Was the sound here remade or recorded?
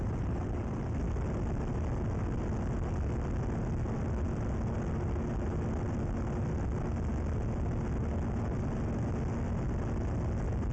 recorded